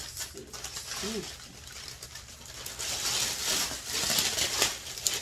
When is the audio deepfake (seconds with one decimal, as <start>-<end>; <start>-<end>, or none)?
0.0-0.8; 1.7-2.9; 3.5-5.2